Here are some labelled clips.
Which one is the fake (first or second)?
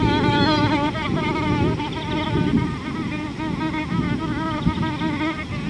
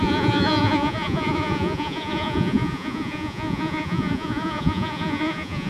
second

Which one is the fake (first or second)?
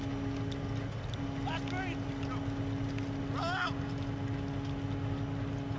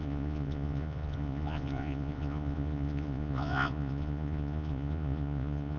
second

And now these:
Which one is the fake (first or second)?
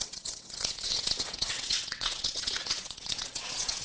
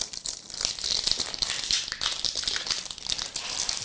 first